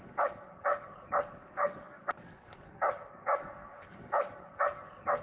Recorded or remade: remade